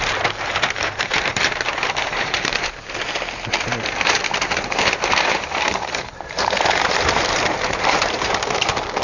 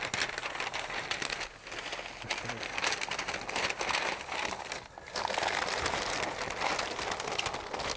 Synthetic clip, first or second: first